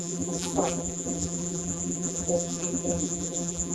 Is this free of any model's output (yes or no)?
no